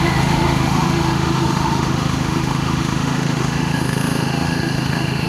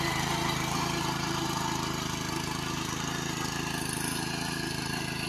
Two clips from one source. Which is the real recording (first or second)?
second